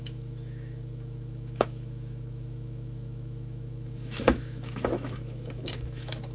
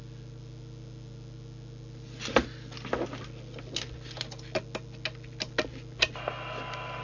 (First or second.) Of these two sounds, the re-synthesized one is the first